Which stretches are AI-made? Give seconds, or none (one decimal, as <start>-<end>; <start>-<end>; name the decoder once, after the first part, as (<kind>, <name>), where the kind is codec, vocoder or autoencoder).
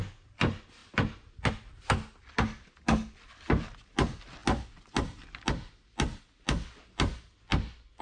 none